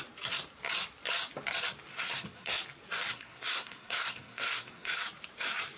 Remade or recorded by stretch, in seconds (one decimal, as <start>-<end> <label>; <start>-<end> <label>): 0.0-1.9 recorded; 1.9-2.6 remade; 2.6-3.1 recorded; 3.1-4.9 remade; 4.9-5.8 recorded